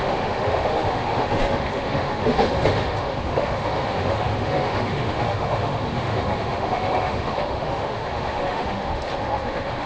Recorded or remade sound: remade